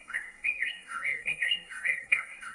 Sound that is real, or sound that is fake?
fake